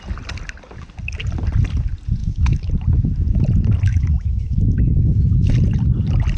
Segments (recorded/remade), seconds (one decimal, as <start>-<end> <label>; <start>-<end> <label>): 0.0-2.2 recorded; 2.2-2.7 remade; 2.7-3.9 recorded; 3.9-5.5 remade; 5.5-6.4 recorded